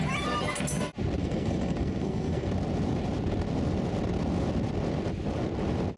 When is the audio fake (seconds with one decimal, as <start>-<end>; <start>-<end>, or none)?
1.2-2.5